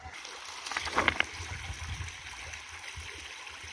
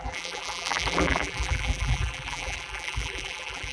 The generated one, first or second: second